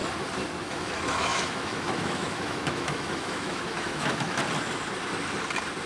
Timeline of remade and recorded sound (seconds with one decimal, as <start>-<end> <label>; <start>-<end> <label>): 0.0-0.6 recorded; 0.6-4.4 remade; 4.4-5.9 recorded